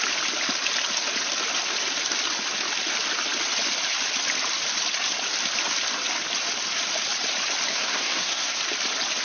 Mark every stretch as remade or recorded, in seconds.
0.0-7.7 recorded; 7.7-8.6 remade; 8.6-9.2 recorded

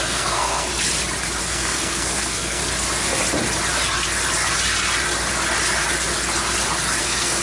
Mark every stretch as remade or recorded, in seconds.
0.0-0.7 remade; 0.7-1.4 recorded; 1.4-2.6 remade; 2.6-7.0 recorded; 7.0-7.4 remade

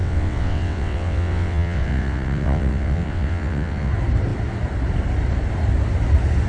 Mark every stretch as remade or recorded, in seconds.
0.0-3.9 remade; 3.9-6.5 recorded